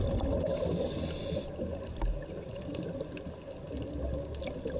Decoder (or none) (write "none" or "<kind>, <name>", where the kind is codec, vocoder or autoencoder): none